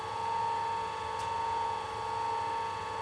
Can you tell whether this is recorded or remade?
recorded